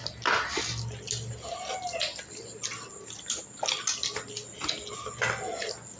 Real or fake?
real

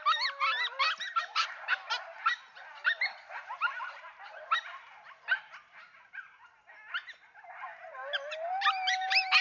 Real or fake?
real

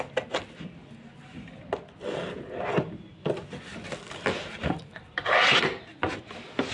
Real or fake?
real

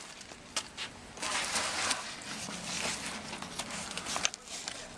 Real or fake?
real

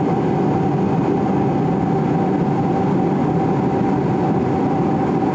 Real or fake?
real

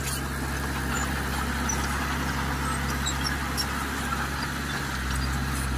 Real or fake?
real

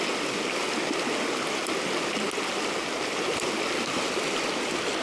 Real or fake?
real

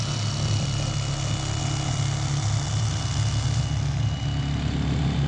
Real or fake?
real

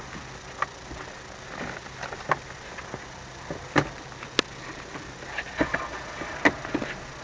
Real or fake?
real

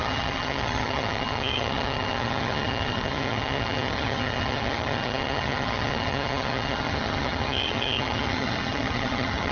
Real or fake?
fake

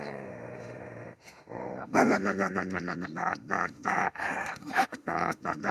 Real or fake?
fake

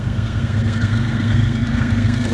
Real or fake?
fake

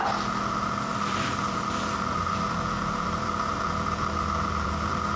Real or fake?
fake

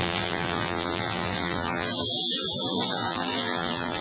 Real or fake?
fake